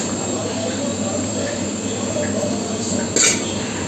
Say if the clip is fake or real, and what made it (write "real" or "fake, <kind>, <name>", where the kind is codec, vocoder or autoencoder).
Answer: real